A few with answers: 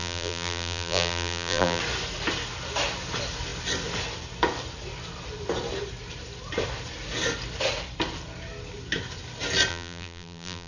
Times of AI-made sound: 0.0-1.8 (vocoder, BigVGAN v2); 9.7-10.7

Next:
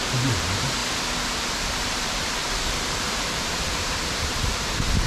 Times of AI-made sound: 0.0-0.8 (vocoder, BigVGAN v2); 1.5-5.1

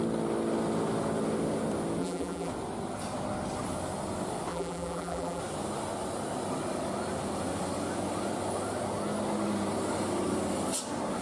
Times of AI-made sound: 2.0-2.5 (vocoder, BigVGAN v2); 4.5-5.4

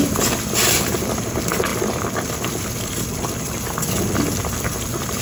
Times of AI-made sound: none

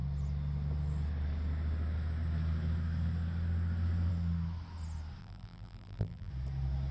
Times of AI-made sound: 5.2-6.3 (vocoder, BigVGAN v2)

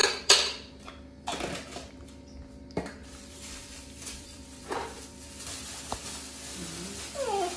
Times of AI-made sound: 0.0-0.9 (vocoder, BigVGAN v2); 3.0-5.8

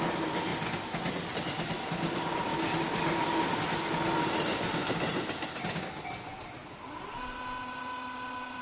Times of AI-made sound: none